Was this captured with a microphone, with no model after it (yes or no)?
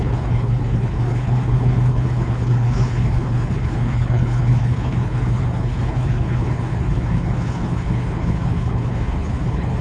no